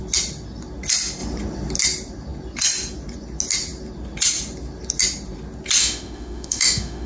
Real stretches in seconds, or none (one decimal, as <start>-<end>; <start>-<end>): 0.0-5.8